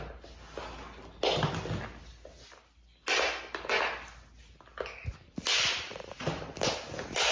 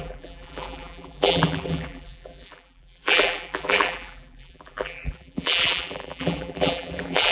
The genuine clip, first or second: first